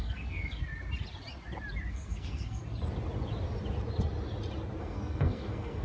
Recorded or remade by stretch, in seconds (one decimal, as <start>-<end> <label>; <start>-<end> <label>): 0.0-0.6 remade; 0.6-1.9 recorded; 1.9-2.6 remade; 2.6-4.8 recorded; 4.8-5.8 remade